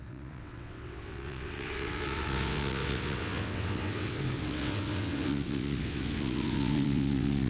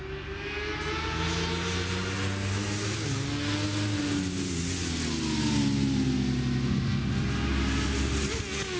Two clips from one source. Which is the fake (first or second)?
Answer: first